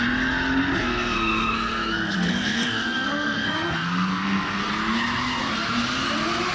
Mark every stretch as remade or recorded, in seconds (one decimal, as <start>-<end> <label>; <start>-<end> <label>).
0.0-0.8 recorded; 0.8-4.7 remade; 4.7-6.5 recorded